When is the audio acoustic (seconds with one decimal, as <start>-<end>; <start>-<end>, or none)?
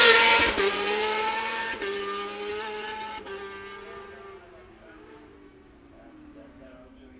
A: 2.0-2.5; 3.4-7.2